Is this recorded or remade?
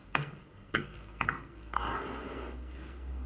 remade